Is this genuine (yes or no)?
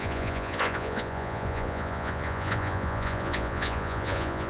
no